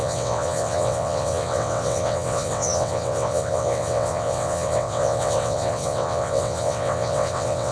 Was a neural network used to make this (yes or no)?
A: yes